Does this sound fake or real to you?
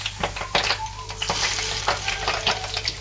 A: real